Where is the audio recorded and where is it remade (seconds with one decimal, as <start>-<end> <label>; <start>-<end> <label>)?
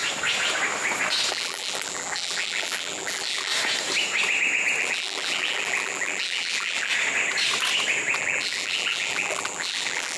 0.0-1.3 recorded; 1.3-3.5 remade; 3.5-4.8 recorded; 4.8-6.9 remade; 6.9-8.2 recorded; 8.2-10.2 remade